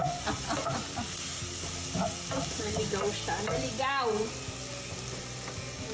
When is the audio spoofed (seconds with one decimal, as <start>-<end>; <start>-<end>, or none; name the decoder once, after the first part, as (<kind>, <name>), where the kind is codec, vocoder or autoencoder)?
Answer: none